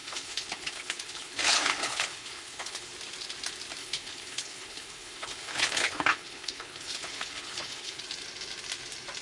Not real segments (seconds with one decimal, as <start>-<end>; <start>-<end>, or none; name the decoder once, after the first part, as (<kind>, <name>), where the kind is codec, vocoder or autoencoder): 0.0-2.9 (codec, HILCodec); 3.8-8.0

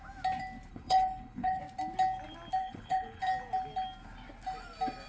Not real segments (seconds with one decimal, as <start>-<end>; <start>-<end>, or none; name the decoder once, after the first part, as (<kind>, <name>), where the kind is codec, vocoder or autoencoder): 0.7-1.6 (codec, HILCodec); 2.6-3.2